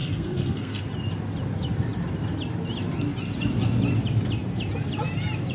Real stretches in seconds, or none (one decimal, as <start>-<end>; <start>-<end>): 0.8-5.5